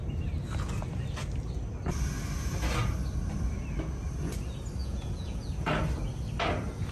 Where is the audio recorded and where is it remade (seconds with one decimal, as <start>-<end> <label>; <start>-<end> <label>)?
0.0-4.8 recorded; 4.8-5.5 remade; 5.5-6.9 recorded